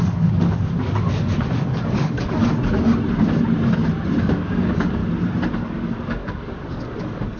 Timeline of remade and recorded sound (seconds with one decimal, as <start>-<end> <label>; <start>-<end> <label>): 0.0-2.4 remade; 2.4-4.2 recorded; 4.2-5.0 remade; 5.0-5.5 recorded; 5.5-7.4 remade